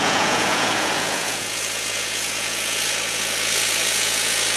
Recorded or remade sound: remade